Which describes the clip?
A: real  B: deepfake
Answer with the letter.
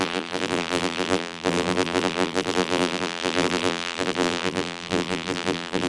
B